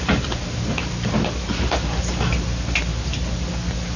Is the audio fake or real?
real